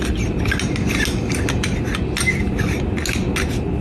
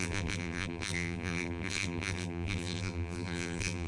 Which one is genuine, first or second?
first